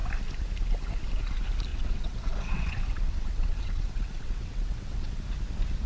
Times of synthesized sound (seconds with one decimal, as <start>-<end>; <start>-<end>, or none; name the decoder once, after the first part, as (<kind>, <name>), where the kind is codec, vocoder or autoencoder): 1.7-5.2 (vocoder, WaveNeXt)